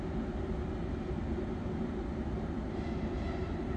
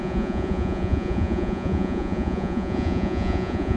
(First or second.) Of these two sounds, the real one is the first